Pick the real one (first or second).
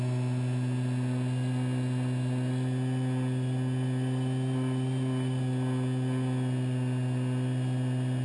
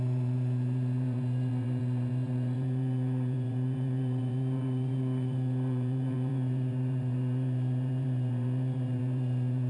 first